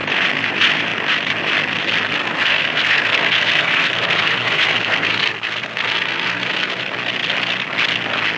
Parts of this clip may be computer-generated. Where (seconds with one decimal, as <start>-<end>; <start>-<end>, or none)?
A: 2.2-6.8